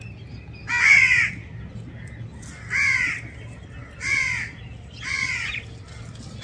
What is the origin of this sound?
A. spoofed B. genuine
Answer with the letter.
B